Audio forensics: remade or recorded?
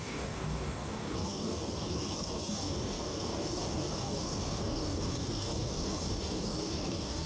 remade